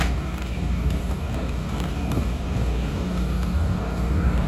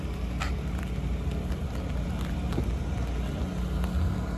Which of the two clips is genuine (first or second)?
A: second